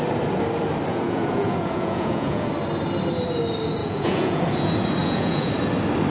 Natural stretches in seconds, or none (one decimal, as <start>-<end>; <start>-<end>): 0.0-0.9; 2.5-3.8; 4.4-5.0; 5.5-6.1